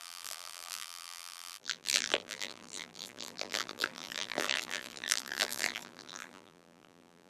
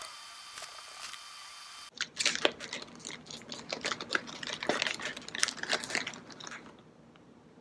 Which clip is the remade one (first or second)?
first